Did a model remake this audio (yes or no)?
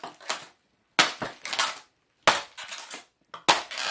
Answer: no